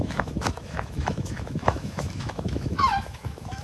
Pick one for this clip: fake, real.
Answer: fake